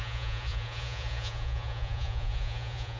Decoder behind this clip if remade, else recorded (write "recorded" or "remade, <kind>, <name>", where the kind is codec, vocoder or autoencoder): remade, vocoder, Vocos